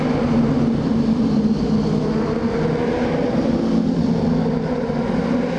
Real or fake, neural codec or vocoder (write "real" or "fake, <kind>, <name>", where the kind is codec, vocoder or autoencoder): real